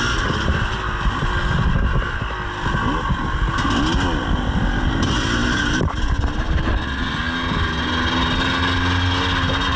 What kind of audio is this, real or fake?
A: real